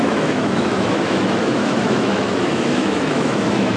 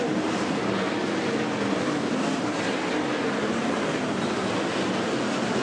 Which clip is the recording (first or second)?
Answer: second